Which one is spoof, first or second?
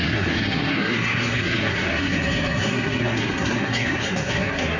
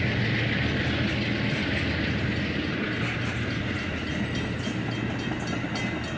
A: first